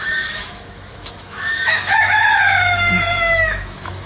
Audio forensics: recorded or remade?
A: remade